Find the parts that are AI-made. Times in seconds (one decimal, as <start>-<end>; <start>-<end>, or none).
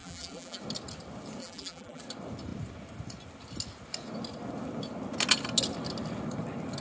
0.0-0.6; 1.4-2.0